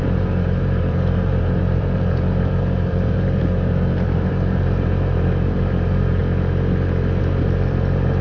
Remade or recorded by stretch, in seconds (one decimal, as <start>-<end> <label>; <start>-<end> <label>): 0.0-6.2 remade; 6.2-7.2 recorded; 7.2-8.2 remade